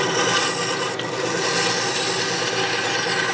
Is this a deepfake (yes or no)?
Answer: no